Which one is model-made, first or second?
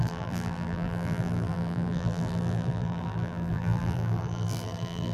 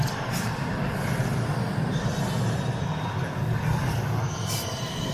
first